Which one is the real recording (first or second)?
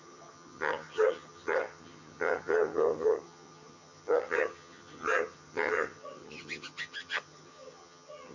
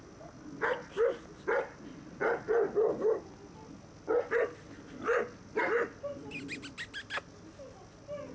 second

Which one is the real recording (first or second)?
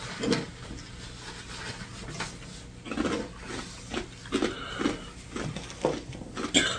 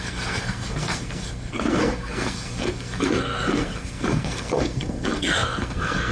first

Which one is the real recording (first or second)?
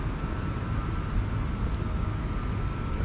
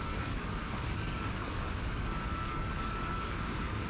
first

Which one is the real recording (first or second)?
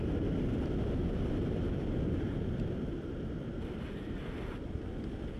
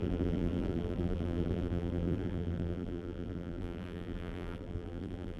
first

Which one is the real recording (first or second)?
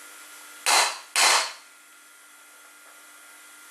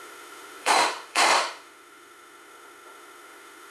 first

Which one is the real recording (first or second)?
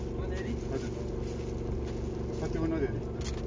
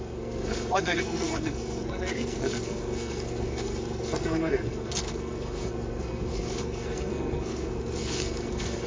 first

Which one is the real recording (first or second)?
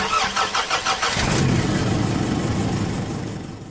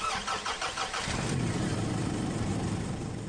first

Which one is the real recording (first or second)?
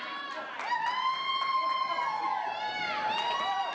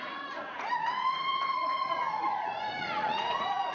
first